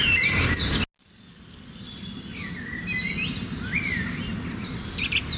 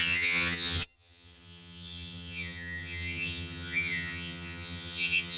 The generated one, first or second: second